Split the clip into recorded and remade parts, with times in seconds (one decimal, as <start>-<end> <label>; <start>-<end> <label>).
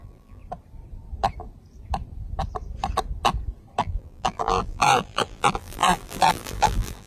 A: 0.0-0.4 remade; 0.4-3.8 recorded; 3.8-7.1 remade